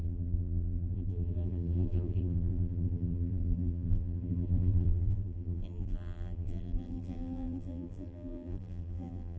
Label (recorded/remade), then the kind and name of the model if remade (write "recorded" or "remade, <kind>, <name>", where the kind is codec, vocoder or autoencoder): remade, vocoder, BigVGAN v2